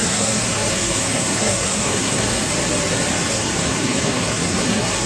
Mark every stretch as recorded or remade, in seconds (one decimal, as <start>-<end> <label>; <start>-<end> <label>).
0.0-2.5 remade; 2.5-3.3 recorded; 3.3-5.1 remade